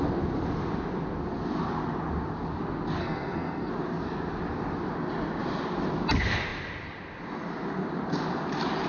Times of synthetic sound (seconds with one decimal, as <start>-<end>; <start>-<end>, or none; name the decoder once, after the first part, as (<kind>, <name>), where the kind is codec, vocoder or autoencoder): 3.0-3.7 (codec, SNAC)